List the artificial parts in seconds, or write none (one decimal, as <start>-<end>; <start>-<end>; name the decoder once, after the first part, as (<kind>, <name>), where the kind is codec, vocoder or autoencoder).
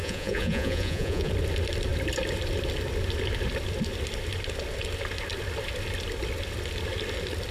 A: 0.0-1.3 (vocoder, Vocos)